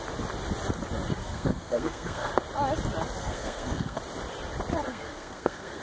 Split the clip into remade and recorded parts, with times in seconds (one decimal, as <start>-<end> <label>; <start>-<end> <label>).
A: 0.0-1.2 recorded; 1.2-2.3 remade; 2.3-3.2 recorded; 3.2-4.0 remade; 4.0-4.9 recorded; 4.9-5.8 remade